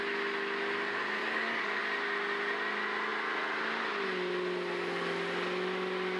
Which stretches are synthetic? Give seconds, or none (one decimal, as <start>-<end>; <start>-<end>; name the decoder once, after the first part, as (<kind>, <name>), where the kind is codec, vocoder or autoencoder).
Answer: 1.2-1.8 (codec, DAC)